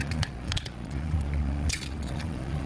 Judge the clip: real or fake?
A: fake